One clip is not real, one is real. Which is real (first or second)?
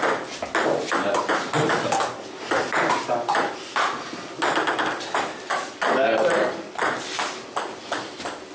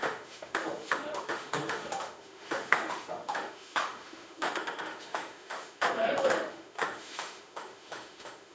first